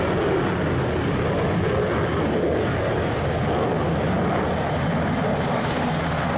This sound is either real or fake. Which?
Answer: real